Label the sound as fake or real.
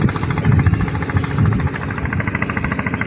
real